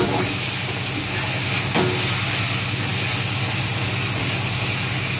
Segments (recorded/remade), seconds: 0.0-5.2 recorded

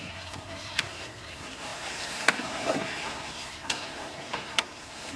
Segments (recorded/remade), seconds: 0.0-5.2 remade

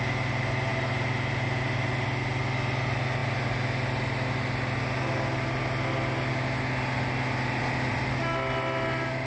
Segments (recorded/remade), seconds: 0.0-9.3 recorded

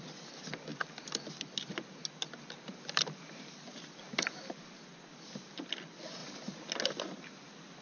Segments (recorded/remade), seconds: 0.0-7.8 recorded

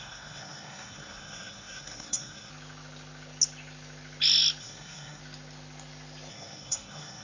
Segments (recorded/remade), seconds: 0.0-2.5 remade; 2.5-4.6 recorded; 4.6-5.2 remade; 5.2-6.3 recorded; 6.3-7.2 remade

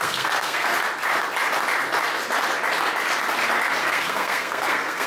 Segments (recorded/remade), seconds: 0.0-0.7 remade; 0.7-3.8 recorded; 3.8-5.1 remade

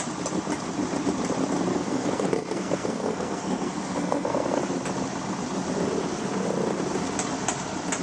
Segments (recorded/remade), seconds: 0.0-1.7 recorded; 1.7-4.6 remade; 4.6-8.0 recorded